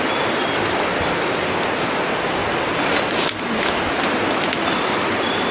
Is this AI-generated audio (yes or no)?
no